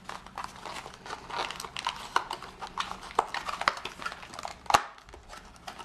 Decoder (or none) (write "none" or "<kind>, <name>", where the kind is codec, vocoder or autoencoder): none